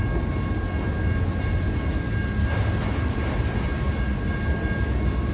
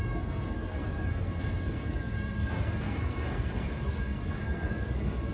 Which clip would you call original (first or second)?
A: first